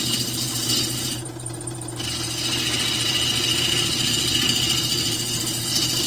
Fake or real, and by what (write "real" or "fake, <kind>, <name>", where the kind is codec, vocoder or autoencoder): fake, vocoder, BigVGAN v2